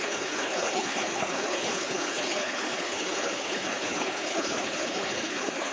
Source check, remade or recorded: remade